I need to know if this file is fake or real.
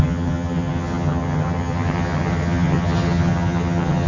fake